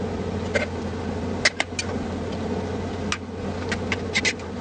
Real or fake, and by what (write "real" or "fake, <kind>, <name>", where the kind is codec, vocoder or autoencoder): real